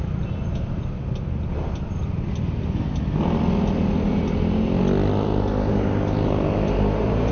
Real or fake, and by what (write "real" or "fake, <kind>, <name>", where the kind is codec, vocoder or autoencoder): real